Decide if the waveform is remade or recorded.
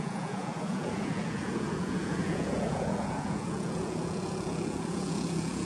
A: remade